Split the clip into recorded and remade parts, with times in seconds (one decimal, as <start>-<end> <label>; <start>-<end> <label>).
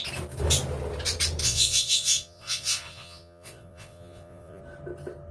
0.0-1.4 recorded; 1.4-4.6 remade; 4.6-5.3 recorded